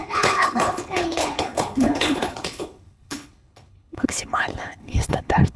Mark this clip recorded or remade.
remade